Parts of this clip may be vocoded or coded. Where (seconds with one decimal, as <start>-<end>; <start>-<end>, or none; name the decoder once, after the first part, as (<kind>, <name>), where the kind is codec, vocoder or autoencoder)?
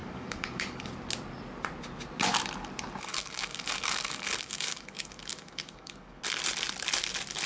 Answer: 0.0-0.9 (codec, DAC); 3.1-6.2